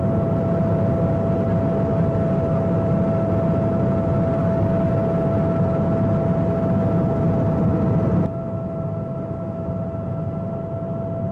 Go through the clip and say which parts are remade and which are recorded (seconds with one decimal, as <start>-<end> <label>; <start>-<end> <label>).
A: 0.0-4.4 recorded; 4.4-4.9 remade; 4.9-11.3 recorded